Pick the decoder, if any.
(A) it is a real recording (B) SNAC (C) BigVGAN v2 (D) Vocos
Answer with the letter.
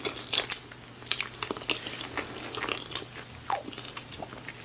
A